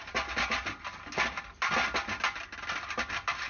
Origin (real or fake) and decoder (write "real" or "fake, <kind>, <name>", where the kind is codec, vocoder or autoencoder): real